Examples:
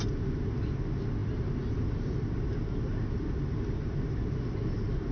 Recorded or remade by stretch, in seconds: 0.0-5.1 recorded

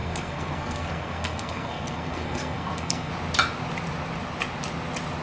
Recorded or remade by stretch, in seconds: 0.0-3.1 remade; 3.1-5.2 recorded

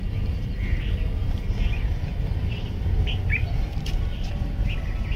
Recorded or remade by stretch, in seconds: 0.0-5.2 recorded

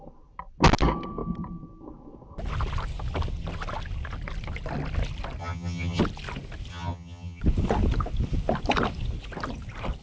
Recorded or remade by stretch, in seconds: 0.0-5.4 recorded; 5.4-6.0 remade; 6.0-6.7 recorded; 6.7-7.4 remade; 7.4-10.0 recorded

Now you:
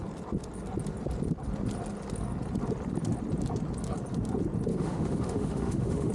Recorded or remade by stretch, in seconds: 0.0-4.7 recorded; 4.7-6.1 remade